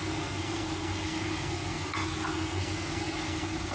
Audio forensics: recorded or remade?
remade